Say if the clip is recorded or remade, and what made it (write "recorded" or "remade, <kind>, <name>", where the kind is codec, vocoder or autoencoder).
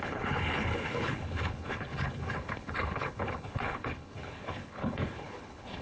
remade, codec, HILCodec